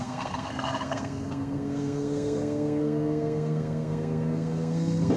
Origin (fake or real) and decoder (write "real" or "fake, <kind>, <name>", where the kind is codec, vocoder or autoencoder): fake, codec, SNAC